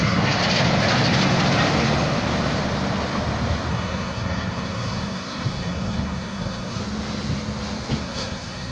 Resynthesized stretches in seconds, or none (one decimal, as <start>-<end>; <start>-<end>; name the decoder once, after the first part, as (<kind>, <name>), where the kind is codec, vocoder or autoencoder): 0.0-0.4 (codec, SNAC); 3.7-6.8; 8.0-8.7